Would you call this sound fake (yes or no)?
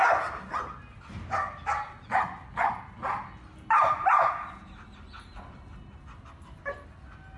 no